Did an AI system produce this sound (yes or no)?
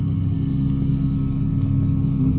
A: no